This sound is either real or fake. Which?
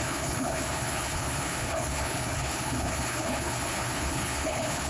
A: fake